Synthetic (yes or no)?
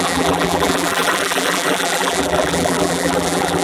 yes